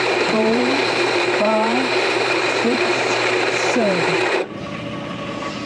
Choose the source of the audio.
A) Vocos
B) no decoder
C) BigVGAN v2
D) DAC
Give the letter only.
C